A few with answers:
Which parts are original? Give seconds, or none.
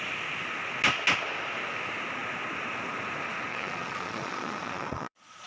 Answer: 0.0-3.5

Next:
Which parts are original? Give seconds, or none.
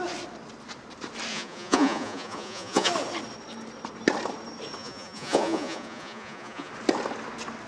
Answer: 0.0-1.3; 2.9-4.8; 6.7-7.7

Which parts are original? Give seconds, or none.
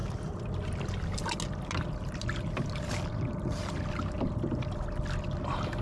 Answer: 0.0-5.8